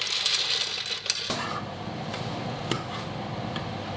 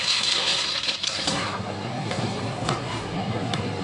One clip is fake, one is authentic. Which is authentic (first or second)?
first